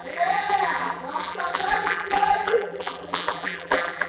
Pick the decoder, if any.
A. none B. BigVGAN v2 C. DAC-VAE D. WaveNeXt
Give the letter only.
B